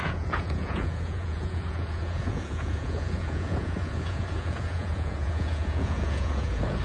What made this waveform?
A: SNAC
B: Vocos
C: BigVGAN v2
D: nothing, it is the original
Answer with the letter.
B